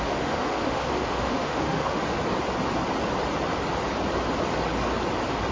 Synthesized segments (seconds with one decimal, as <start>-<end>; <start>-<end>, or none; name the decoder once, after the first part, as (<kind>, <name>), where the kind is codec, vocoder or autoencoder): 0.0-2.0 (autoencoder, DAC-VAE)